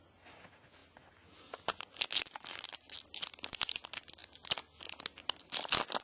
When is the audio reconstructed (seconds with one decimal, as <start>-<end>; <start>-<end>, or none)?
none